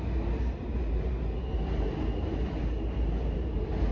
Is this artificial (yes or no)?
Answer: no